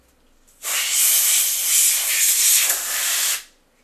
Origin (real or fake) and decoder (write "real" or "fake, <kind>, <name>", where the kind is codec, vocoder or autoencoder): real